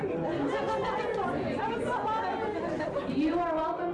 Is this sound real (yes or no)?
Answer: yes